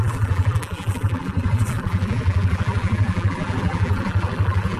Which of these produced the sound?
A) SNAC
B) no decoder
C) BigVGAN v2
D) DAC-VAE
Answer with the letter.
C